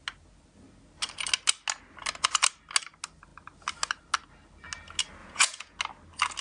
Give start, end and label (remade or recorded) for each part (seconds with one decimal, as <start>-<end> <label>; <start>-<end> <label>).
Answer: 0.0-5.2 recorded; 5.2-5.8 remade; 5.8-6.4 recorded